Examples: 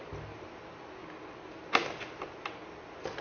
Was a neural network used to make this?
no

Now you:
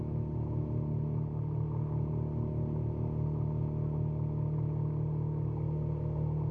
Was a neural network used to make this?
no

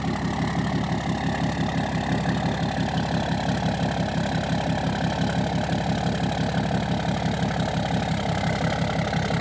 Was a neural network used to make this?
no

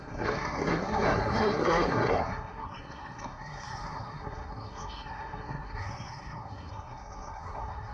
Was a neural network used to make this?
yes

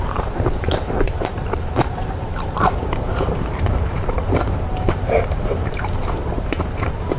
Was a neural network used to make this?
yes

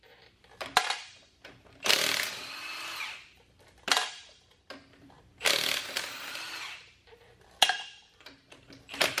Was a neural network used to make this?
yes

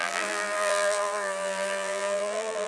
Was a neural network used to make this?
yes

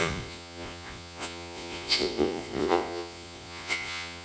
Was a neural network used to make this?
yes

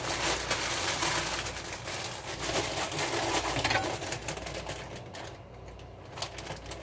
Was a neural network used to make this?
no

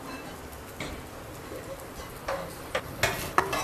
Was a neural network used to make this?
no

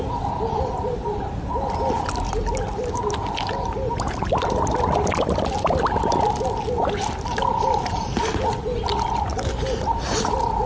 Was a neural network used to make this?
no